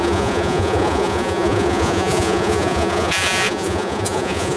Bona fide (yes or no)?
no